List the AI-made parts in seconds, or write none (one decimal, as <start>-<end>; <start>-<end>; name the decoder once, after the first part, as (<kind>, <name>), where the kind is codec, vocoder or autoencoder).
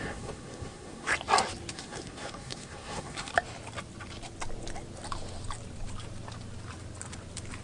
0.0-1.1 (codec, SNAC); 1.7-3.3